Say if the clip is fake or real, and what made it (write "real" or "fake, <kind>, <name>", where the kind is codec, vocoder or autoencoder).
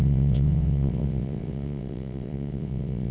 fake, vocoder, WaveNeXt